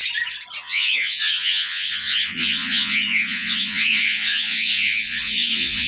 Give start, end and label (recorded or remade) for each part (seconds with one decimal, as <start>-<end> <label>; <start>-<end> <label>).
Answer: 0.0-0.6 recorded; 0.6-5.9 remade